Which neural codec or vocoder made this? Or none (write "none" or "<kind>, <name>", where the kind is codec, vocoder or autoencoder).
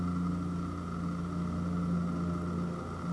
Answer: none